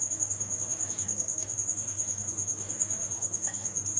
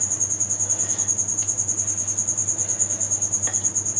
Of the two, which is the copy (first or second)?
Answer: first